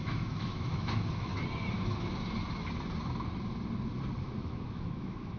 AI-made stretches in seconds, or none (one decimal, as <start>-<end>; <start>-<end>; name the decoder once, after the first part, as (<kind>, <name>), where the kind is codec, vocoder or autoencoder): 0.0-1.3 (autoencoder, DAC-VAE); 4.2-5.4